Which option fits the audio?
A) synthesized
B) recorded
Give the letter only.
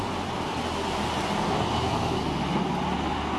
B